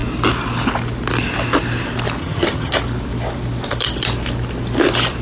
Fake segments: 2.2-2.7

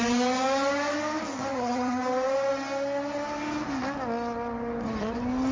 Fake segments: 1.5-2.0

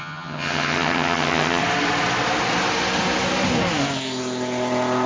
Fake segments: 0.0-1.6